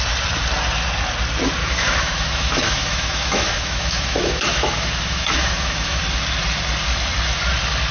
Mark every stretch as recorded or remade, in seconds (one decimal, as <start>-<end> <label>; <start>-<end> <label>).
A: 0.0-1.6 recorded; 1.6-6.0 remade; 6.0-7.9 recorded